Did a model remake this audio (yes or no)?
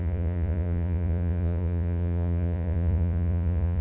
yes